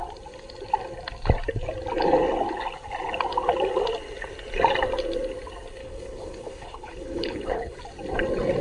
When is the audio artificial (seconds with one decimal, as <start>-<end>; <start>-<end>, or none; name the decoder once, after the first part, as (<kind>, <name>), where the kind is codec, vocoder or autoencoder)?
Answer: 5.8-7.8 (codec, HILCodec)